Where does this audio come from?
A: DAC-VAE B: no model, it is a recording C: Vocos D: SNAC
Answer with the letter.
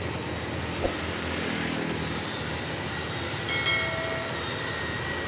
B